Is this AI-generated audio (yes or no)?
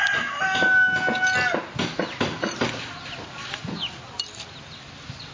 no